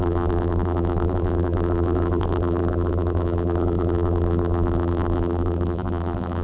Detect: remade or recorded remade